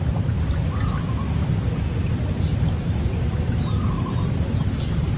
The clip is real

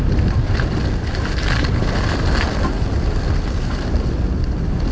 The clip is real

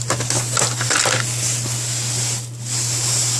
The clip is real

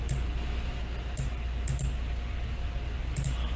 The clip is real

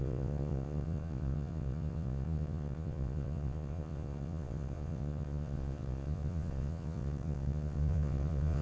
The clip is fake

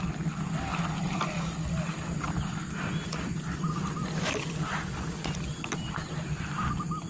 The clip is real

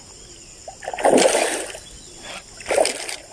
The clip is real